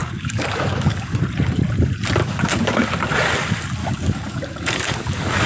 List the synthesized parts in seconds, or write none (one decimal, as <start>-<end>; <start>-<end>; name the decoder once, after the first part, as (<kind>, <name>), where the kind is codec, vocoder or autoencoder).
0.0-1.2 (codec, DAC); 2.2-2.9; 3.8-5.5